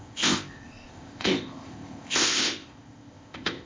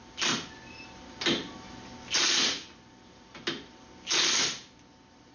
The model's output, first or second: first